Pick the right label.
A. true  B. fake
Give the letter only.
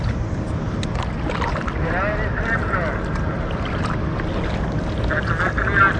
A